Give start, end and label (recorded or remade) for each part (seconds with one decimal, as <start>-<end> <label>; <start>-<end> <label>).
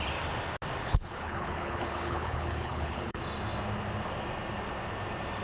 0.0-0.8 recorded; 0.8-3.2 remade; 3.2-5.4 recorded